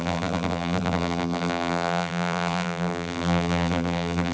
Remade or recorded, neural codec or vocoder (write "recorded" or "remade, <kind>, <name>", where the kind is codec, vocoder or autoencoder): remade, vocoder, BigVGAN v2